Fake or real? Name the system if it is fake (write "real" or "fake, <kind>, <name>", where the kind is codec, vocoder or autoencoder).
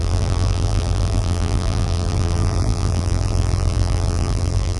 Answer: fake, vocoder, BigVGAN v2